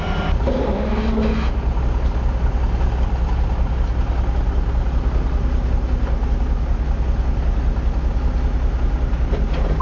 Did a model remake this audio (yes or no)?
no